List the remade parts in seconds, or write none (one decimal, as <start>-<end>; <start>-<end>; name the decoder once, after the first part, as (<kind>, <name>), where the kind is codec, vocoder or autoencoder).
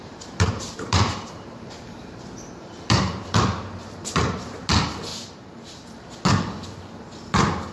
0.0-3.2 (vocoder, BigVGAN v2); 3.8-4.5; 5.1-6.1